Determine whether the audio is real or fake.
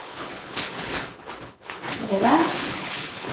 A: fake